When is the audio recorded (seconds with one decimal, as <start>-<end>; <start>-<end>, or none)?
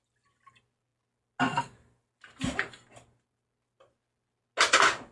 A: 0.0-5.1